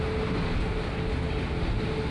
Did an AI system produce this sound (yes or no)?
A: no